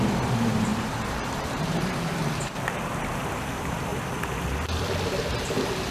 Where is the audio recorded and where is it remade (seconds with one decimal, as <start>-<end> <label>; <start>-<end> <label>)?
0.0-2.2 remade; 2.2-2.9 recorded; 2.9-3.9 remade; 3.9-5.2 recorded; 5.2-5.9 remade